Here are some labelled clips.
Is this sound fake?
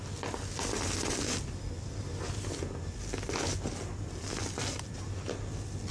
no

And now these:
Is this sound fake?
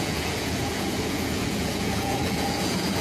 yes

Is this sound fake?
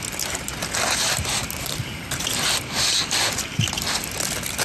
no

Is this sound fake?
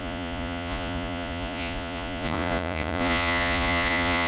yes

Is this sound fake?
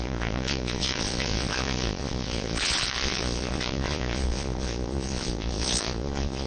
yes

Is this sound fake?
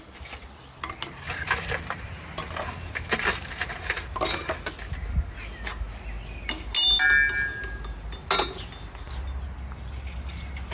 no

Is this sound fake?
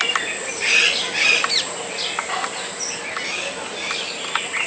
no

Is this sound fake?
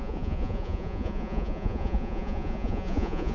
yes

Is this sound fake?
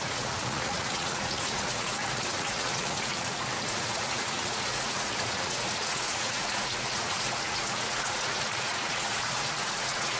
yes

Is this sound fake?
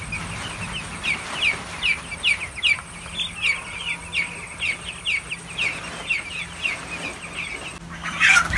no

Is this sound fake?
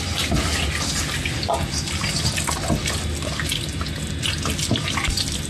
no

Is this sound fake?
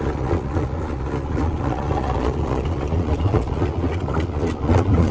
yes